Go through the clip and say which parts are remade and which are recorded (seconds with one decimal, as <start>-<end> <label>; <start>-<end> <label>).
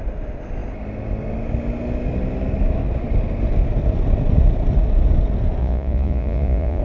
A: 0.0-5.6 recorded; 5.6-6.8 remade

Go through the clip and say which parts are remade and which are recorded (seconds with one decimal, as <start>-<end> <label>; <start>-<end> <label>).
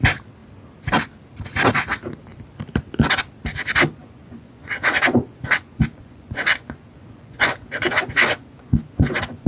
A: 0.0-4.0 recorded; 4.0-9.5 remade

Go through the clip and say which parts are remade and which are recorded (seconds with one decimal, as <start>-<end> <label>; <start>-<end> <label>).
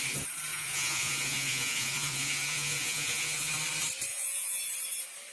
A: 0.0-0.5 recorded; 0.5-3.5 remade; 3.5-4.1 recorded; 4.1-4.6 remade; 4.6-5.3 recorded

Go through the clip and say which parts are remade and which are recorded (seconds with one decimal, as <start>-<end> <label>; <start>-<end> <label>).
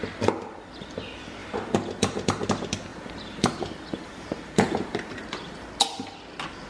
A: 0.0-1.4 recorded; 1.4-2.5 remade; 2.5-2.9 recorded; 2.9-5.7 remade; 5.7-6.7 recorded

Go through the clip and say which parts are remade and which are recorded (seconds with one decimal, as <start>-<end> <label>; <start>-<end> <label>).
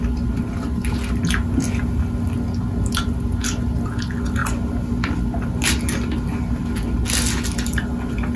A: 0.0-8.4 recorded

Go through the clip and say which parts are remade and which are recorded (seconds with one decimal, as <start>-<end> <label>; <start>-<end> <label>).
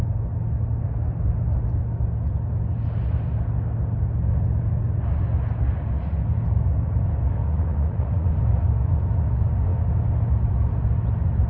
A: 0.0-7.4 recorded; 7.4-8.3 remade; 8.3-11.5 recorded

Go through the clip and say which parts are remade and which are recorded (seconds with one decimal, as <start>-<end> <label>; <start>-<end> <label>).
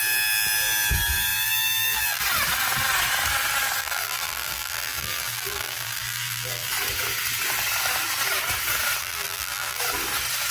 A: 0.0-1.3 recorded; 1.3-2.2 remade; 2.2-3.8 recorded; 3.8-6.7 remade; 6.7-9.0 recorded; 9.0-9.8 remade; 9.8-10.5 recorded